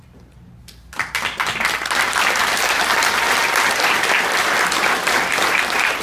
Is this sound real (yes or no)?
yes